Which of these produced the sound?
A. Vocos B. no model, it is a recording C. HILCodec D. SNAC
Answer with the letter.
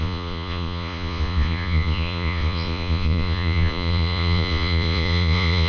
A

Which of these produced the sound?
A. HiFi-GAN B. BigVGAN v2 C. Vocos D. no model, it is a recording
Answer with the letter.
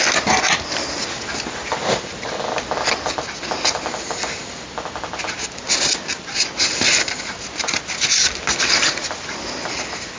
D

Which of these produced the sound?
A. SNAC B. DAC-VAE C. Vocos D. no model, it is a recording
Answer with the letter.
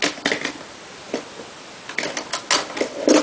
D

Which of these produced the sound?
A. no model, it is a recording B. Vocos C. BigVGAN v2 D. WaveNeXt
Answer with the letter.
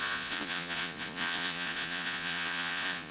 B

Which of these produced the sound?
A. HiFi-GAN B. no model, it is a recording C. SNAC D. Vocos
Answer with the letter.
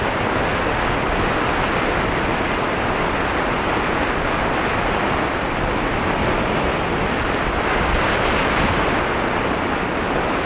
B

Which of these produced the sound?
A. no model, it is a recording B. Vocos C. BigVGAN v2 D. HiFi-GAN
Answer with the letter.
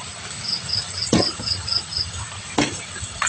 A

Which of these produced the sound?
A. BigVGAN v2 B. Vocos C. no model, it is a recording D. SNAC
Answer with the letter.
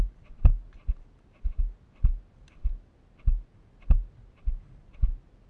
C